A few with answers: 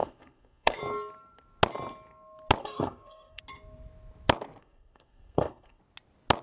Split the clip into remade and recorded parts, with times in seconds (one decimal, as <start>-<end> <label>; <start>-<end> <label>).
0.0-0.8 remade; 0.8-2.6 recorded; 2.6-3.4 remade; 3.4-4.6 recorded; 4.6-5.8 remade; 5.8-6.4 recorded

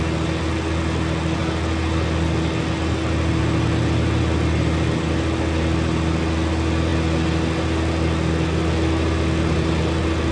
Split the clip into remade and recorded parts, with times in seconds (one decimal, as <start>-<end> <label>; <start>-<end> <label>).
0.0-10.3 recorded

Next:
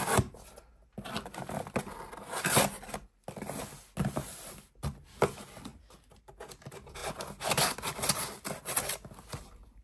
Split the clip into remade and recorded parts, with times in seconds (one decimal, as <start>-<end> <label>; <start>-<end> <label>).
0.0-9.8 recorded

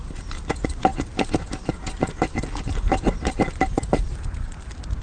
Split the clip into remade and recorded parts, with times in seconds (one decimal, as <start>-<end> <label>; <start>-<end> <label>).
0.0-5.0 remade

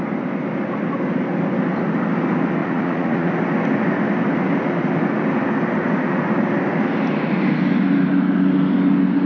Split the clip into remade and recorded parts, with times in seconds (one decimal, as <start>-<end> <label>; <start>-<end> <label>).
0.0-2.6 recorded; 2.6-3.3 remade; 3.3-9.3 recorded